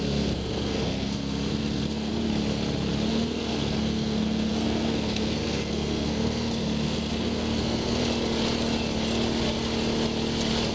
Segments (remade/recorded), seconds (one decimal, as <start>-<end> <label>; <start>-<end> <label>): 0.0-2.1 remade; 2.1-3.1 recorded; 3.1-8.0 remade; 8.0-10.7 recorded